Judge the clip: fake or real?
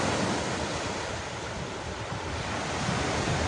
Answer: real